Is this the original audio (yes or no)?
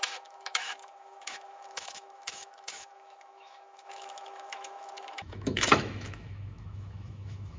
no